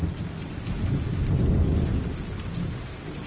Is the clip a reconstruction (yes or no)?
no